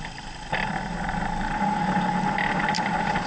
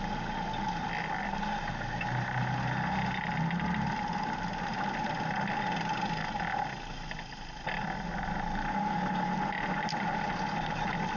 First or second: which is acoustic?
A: second